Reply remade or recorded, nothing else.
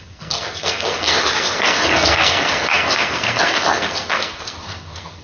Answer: remade